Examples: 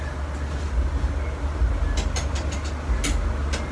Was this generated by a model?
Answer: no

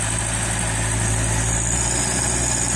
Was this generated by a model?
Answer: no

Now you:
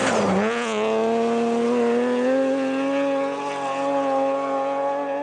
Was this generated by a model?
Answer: no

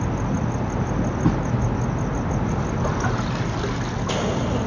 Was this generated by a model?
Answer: no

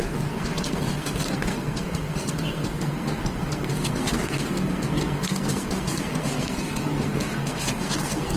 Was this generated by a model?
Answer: yes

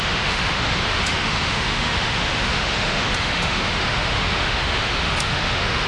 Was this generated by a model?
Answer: yes